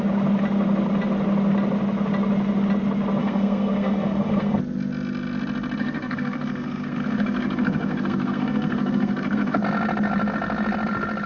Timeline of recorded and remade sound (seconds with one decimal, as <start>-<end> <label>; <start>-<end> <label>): 0.0-3.2 recorded; 3.2-4.6 remade; 4.6-5.8 recorded; 5.8-9.6 remade; 9.6-11.3 recorded